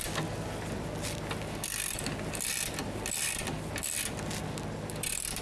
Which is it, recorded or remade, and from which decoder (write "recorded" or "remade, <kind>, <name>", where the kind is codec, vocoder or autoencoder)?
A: recorded